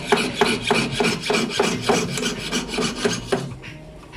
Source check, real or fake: real